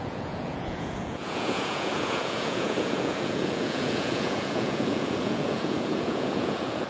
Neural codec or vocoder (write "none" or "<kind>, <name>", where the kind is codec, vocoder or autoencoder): vocoder, Vocos